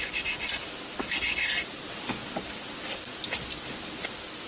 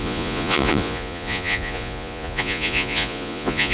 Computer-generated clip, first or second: second